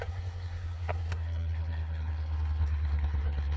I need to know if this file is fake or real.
fake